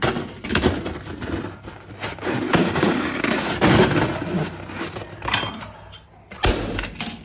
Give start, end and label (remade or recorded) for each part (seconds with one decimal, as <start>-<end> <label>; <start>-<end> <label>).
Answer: 0.0-2.6 recorded; 2.6-3.2 remade; 3.2-7.2 recorded